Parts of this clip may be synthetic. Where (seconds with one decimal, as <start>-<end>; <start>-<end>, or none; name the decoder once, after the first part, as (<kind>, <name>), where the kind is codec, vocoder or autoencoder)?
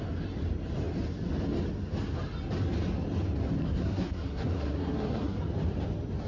3.6-5.4 (codec, SNAC)